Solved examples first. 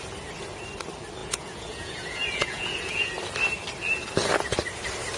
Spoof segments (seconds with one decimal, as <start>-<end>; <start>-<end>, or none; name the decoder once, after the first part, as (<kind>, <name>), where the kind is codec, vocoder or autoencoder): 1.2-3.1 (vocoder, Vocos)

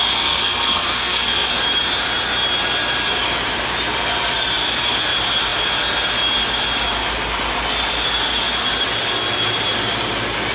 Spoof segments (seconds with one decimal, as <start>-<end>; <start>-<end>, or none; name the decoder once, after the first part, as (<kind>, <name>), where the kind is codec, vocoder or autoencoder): 0.0-1.5 (codec, SNAC)

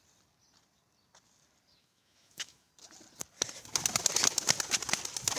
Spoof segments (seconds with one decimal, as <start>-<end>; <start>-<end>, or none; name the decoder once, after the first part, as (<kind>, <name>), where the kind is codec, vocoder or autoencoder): 1.8-2.7 (autoencoder, DAC-VAE)

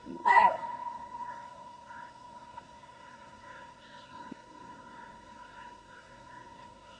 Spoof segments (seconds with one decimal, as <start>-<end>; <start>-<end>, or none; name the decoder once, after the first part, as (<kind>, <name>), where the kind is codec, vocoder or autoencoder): 0.0-7.0 (codec, SNAC)